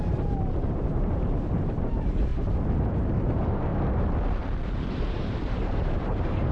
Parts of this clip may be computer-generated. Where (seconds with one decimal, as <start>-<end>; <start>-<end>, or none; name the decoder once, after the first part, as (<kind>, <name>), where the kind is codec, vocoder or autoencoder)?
0.0-2.3 (vocoder, BigVGAN v2); 2.8-3.7; 4.4-6.5